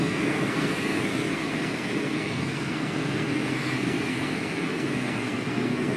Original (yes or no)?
no